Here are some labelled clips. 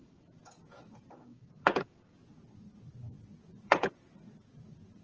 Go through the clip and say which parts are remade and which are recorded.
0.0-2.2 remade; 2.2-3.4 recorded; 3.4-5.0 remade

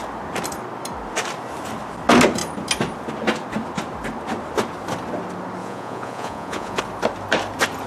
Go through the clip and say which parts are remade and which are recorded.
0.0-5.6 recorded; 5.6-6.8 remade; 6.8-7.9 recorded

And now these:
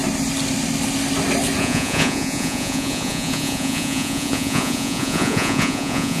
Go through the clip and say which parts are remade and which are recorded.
0.0-1.6 recorded; 1.6-6.2 remade

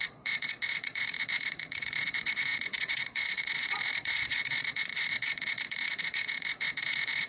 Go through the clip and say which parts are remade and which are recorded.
0.0-7.3 remade

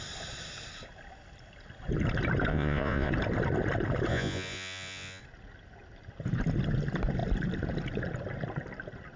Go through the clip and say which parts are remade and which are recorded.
0.0-2.5 recorded; 2.5-3.1 remade; 3.1-4.1 recorded; 4.1-5.2 remade; 5.2-9.2 recorded